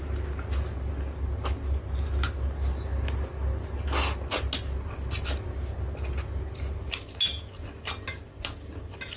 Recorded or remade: recorded